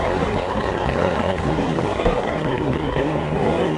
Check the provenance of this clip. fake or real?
fake